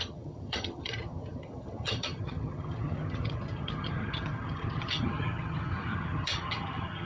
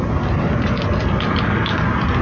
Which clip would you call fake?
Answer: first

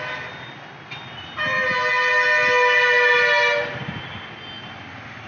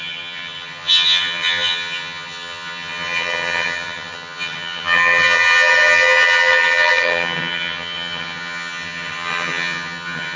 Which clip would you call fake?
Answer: second